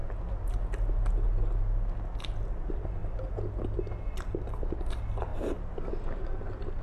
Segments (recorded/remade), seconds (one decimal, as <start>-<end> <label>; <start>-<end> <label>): 0.0-6.8 recorded